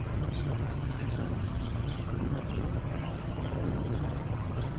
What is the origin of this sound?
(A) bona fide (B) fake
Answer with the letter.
B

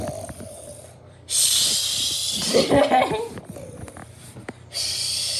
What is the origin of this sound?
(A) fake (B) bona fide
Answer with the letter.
A